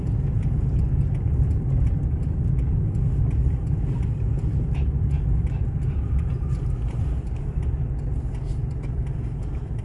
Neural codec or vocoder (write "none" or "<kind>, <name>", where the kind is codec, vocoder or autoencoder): none